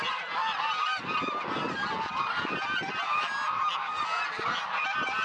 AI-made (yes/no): no